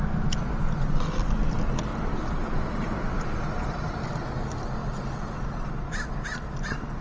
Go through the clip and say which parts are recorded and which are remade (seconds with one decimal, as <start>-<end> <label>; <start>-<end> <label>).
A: 0.0-1.9 recorded; 1.9-4.1 remade; 4.1-4.8 recorded; 4.8-5.6 remade; 5.6-7.0 recorded